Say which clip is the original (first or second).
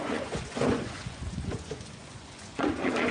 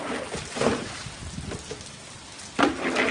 second